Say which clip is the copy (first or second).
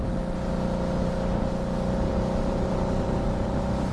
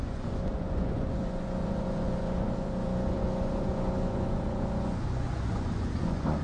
second